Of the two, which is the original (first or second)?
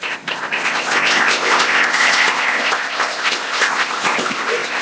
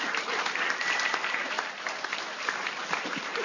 second